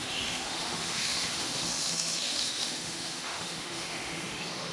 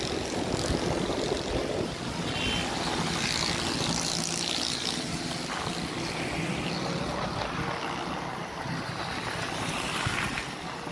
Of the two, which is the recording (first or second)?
second